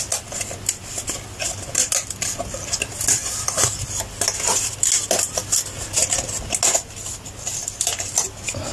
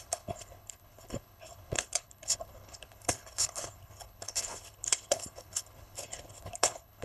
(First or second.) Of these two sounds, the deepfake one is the second